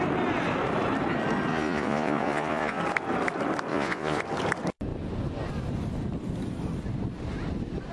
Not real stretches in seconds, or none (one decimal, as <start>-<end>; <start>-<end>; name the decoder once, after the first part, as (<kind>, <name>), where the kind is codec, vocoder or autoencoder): 1.5-2.8 (vocoder, Vocos); 3.7-4.2